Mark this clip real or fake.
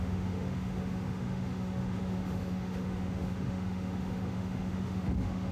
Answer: fake